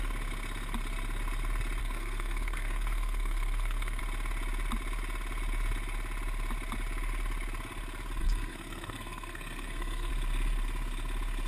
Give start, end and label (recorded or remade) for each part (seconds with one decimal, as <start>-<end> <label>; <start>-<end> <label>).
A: 0.0-1.8 recorded; 1.8-4.0 remade; 4.0-8.2 recorded; 8.2-10.1 remade; 10.1-11.5 recorded